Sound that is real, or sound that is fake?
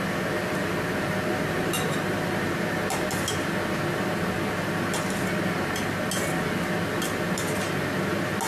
real